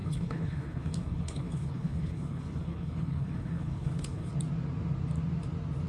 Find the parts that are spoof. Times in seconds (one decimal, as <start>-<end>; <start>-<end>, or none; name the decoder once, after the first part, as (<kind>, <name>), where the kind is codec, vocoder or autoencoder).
0.0-4.3 (codec, HILCodec)